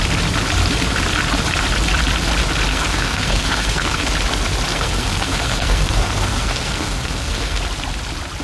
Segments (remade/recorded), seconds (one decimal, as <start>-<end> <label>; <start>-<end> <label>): 0.0-2.7 recorded; 2.7-4.1 remade; 4.1-4.7 recorded; 4.7-7.6 remade; 7.6-8.4 recorded